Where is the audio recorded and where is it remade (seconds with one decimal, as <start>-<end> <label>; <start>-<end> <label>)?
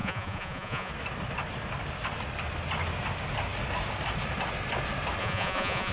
0.0-0.9 remade; 0.9-5.2 recorded; 5.2-5.9 remade